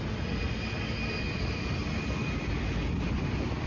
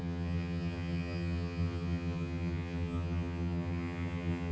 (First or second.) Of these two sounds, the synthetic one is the second